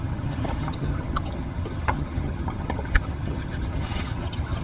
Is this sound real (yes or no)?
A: no